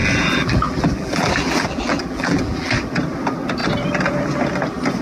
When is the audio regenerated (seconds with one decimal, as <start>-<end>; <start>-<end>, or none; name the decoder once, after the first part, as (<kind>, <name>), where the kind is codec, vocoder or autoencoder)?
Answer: 0.0-2.7 (vocoder, BigVGAN v2)